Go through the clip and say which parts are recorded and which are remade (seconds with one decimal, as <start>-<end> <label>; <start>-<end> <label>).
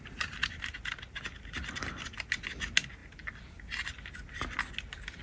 0.0-5.2 recorded